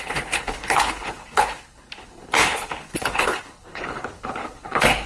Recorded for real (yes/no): no